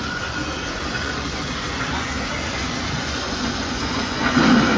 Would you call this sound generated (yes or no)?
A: yes